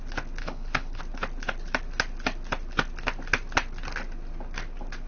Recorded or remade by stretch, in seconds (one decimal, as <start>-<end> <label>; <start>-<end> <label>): 0.0-0.4 recorded; 0.4-1.0 remade; 1.0-5.1 recorded